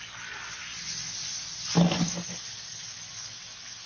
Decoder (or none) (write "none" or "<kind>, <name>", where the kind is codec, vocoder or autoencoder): none